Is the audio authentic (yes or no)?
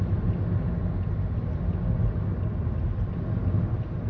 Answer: yes